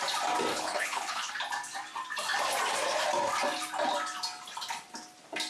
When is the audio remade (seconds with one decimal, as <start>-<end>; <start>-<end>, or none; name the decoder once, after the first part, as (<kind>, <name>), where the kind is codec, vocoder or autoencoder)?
0.5-1.3 (codec, HILCodec)